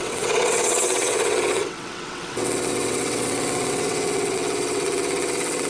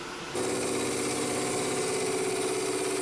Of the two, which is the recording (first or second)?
second